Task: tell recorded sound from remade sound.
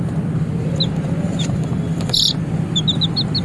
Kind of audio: recorded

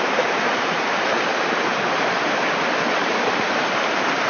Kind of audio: remade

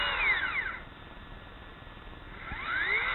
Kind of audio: recorded